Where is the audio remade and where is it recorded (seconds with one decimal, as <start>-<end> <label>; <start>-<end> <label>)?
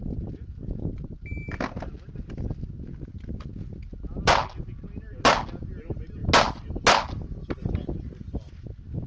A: 0.0-9.1 recorded